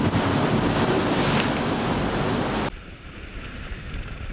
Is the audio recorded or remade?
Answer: remade